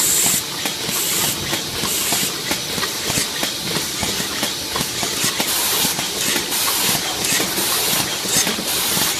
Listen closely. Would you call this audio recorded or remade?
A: recorded